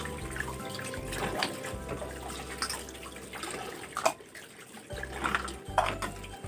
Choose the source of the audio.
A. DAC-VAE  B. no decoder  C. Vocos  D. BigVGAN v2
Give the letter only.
B